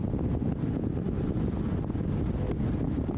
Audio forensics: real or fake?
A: fake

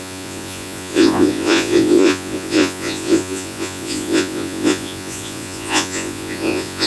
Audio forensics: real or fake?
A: fake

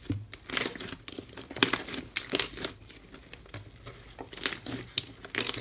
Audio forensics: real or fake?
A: real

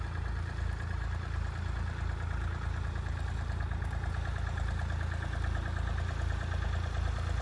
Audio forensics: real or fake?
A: real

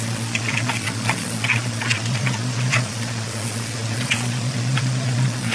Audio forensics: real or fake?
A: fake